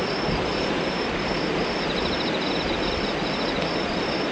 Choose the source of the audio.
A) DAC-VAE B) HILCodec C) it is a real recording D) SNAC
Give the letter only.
C